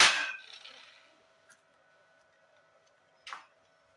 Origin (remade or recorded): recorded